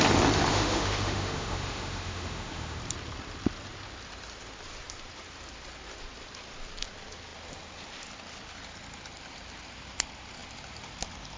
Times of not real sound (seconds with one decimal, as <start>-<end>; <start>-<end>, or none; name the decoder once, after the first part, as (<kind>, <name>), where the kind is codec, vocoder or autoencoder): 0.5-2.8 (autoencoder, DAC-VAE)